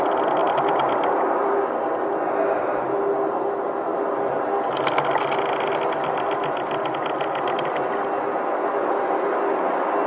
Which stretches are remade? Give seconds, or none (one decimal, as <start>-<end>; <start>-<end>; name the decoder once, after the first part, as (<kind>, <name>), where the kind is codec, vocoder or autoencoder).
0.4-0.9 (vocoder, BigVGAN v2)